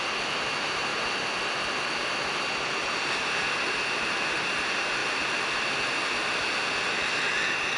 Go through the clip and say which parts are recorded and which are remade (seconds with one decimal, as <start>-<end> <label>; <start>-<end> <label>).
0.0-0.9 remade; 0.9-4.1 recorded; 4.1-5.0 remade; 5.0-7.8 recorded